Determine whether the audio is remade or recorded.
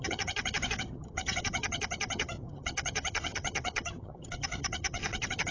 remade